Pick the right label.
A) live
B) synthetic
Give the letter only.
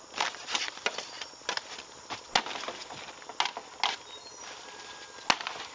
A